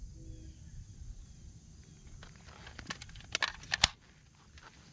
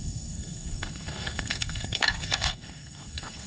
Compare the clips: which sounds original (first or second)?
first